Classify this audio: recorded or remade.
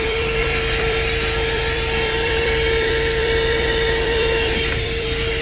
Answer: remade